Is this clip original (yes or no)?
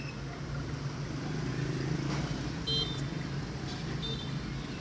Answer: yes